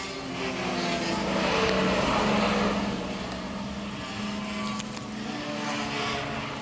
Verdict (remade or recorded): recorded